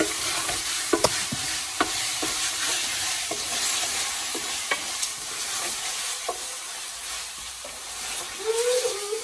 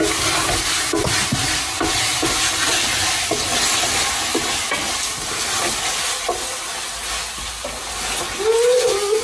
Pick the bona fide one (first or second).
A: second